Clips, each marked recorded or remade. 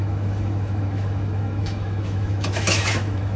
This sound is remade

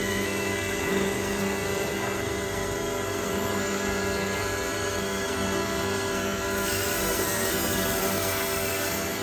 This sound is remade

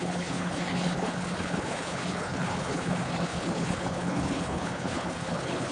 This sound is remade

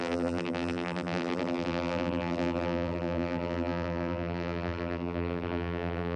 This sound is remade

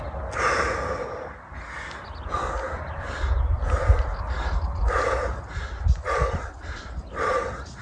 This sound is recorded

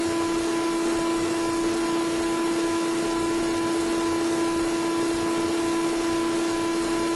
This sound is recorded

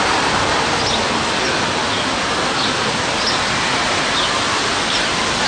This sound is recorded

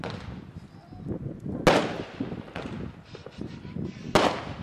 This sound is recorded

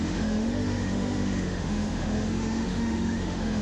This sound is remade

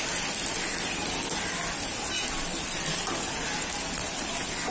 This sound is recorded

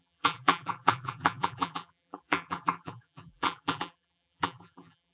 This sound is remade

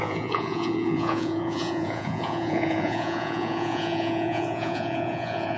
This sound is remade